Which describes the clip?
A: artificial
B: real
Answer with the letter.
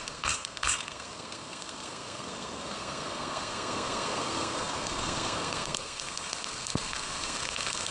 A